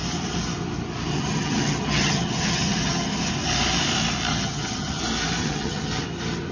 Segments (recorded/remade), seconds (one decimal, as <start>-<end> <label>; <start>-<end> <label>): 0.0-1.1 recorded; 1.1-3.3 remade; 3.3-4.3 recorded; 4.3-5.0 remade; 5.0-5.4 recorded; 5.4-6.0 remade; 6.0-6.5 recorded